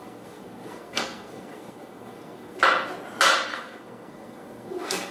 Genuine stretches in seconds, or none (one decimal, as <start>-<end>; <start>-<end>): 2.6-3.5